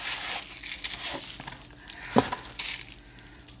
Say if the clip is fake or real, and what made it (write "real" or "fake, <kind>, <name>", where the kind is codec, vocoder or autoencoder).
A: real